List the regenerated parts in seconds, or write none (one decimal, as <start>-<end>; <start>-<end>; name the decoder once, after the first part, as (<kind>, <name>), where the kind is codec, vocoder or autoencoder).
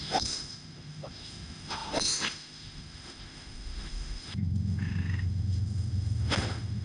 0.0-6.8 (autoencoder, DAC-VAE)